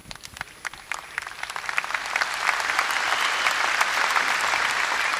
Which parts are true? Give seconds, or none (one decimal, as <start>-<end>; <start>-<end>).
0.0-5.2

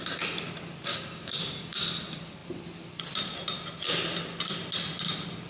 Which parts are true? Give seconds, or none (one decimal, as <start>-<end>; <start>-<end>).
0.0-0.9; 1.8-5.5

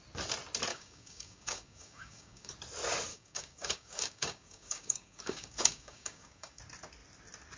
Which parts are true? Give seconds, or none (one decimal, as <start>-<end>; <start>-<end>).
0.0-0.7; 2.5-3.1; 6.6-7.6

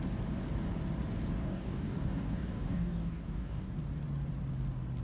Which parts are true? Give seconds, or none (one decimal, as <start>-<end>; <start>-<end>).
0.0-1.4; 3.7-5.0

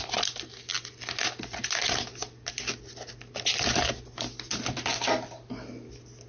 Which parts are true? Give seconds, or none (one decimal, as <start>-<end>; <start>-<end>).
0.0-6.3

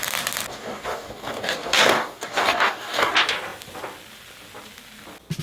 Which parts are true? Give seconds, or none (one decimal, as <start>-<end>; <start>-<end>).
0.0-0.5; 3.1-5.4

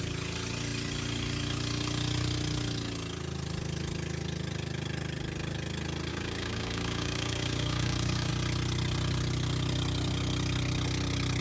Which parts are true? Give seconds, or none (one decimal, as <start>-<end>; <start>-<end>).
0.0-6.1; 8.3-11.4